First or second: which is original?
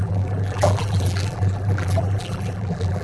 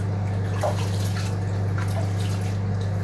second